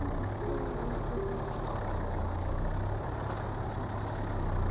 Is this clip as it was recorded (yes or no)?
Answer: yes